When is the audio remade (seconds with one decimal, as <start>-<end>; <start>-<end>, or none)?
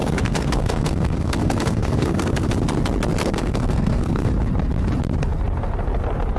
0.0-2.5; 3.2-4.3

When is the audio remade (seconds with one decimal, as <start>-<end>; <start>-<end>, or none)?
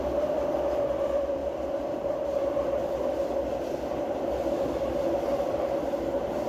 none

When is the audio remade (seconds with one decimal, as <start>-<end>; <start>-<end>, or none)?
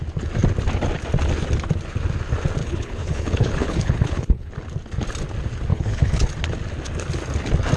2.6-4.5; 5.7-6.3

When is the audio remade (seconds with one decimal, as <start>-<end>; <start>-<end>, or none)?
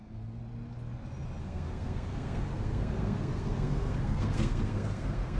0.0-0.4; 1.4-5.4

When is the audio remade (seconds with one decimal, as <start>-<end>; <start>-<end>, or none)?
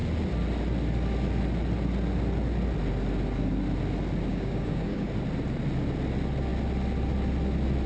4.3-5.1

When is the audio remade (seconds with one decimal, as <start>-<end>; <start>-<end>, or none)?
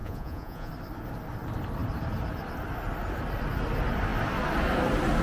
0.0-0.7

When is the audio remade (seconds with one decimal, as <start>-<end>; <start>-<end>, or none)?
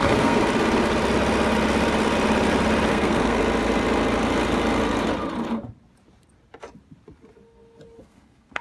0.0-0.4; 2.9-3.4; 8.0-8.6